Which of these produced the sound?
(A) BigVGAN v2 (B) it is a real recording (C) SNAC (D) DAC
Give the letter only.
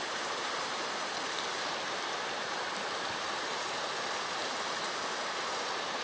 A